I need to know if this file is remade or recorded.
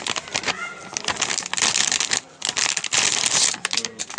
recorded